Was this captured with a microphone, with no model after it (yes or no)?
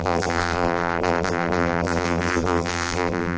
no